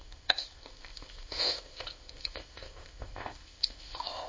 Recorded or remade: remade